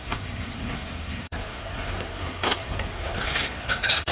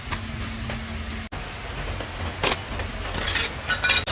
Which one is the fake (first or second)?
first